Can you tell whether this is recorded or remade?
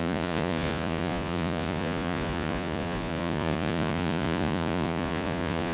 remade